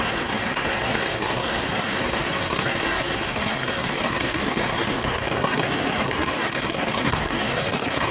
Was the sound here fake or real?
fake